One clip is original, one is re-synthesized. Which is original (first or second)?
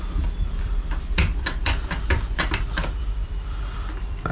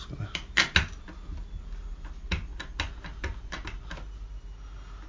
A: second